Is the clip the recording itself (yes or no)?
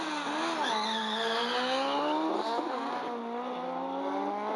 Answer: yes